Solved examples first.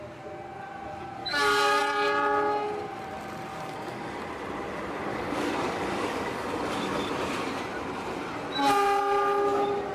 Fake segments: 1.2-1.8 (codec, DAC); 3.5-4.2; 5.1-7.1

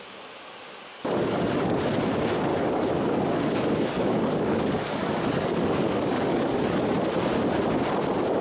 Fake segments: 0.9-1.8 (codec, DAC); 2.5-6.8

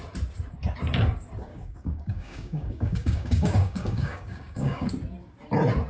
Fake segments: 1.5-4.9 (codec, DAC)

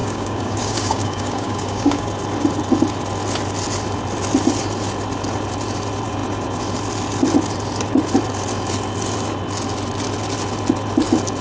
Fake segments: 0.0-2.1 (codec, DAC)